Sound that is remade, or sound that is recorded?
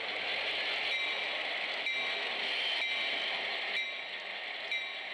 recorded